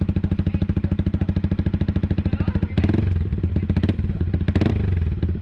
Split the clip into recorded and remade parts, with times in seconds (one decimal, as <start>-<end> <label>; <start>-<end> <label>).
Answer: 0.0-5.4 recorded